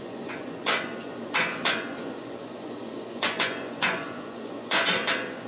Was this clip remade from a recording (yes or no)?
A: yes